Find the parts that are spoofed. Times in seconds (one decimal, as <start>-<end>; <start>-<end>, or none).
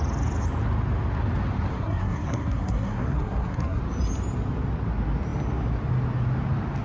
1.7-3.8